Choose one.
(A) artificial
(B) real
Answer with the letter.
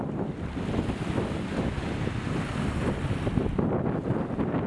B